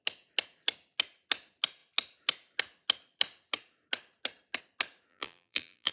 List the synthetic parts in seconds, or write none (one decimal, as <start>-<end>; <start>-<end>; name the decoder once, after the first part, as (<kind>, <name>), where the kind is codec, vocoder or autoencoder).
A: 5.1-5.9 (vocoder, BigVGAN v2)